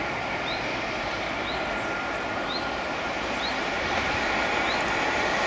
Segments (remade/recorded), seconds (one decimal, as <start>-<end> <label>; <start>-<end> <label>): 0.0-0.7 recorded; 0.7-4.0 remade; 4.0-5.5 recorded